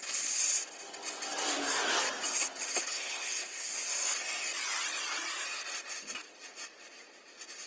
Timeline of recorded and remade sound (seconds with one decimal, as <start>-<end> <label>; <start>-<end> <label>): 0.0-2.9 recorded; 2.9-3.7 remade; 3.7-7.7 recorded